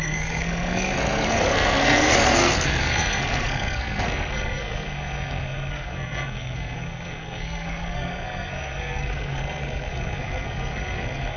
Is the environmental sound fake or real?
fake